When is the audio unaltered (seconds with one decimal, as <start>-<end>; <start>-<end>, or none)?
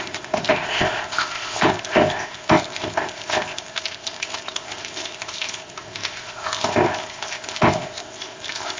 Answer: none